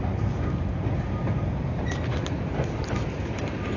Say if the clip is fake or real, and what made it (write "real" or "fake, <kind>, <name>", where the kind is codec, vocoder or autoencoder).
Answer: fake, vocoder, BigVGAN v2